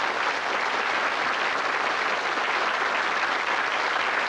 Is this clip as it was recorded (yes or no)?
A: yes